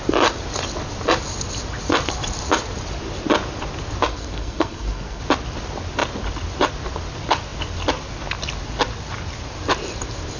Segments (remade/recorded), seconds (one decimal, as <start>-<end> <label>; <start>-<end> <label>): 0.0-4.1 recorded; 4.1-5.2 remade; 5.2-10.4 recorded